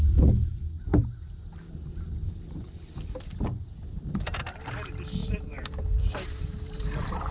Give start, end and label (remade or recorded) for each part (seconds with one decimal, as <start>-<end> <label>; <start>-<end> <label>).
0.0-5.2 recorded; 5.2-7.3 remade